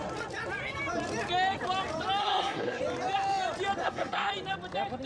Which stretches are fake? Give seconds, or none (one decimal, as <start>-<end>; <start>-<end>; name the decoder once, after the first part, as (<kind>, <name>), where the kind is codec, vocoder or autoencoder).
2.2-2.8 (codec, SNAC); 3.8-4.3

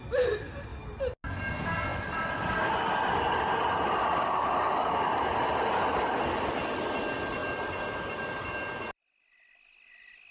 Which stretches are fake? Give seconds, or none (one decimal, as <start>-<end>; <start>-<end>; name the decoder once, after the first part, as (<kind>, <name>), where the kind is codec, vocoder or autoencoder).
1.9-2.9 (vocoder, BigVGAN v2)

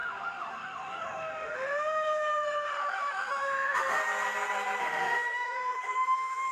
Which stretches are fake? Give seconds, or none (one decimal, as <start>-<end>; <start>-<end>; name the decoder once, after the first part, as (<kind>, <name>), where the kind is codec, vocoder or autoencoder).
0.0-4.0 (autoencoder, DAC-VAE); 4.8-6.5

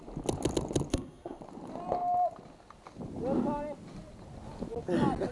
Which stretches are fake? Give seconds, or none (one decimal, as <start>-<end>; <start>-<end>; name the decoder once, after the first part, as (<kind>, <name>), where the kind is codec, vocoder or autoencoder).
0.9-1.4 (codec, SNAC)

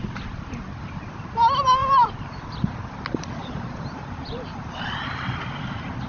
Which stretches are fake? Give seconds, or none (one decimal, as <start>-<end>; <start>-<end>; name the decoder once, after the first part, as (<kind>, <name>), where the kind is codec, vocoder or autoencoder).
1.8-2.4 (vocoder, BigVGAN v2); 3.4-4.7

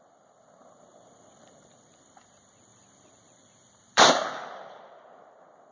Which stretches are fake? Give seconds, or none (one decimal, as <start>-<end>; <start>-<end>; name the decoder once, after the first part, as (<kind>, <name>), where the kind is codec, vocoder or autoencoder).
2.7-4.1 (vocoder, BigVGAN v2)

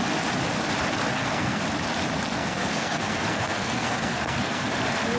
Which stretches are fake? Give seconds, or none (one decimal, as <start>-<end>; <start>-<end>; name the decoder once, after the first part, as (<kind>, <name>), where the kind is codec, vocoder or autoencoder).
1.1-1.6 (codec, SNAC); 2.3-4.7